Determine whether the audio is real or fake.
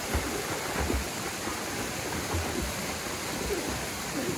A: fake